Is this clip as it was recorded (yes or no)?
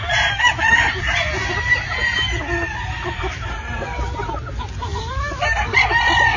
yes